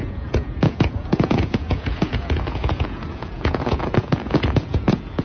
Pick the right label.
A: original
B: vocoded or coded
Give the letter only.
B